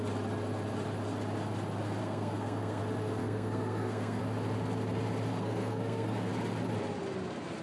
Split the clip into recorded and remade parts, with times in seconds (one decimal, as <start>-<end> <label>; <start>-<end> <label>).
0.0-2.0 recorded; 2.0-2.8 remade; 2.8-3.2 recorded; 3.2-4.2 remade; 4.2-5.3 recorded; 5.3-6.3 remade; 6.3-7.6 recorded